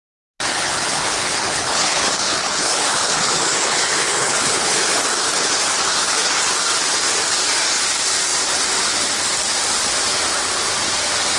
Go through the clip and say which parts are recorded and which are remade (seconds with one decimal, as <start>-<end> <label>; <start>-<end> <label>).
0.0-0.5 recorded; 0.5-5.0 remade; 5.0-11.4 recorded